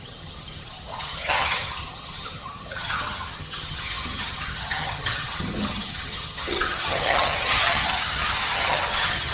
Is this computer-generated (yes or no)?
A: yes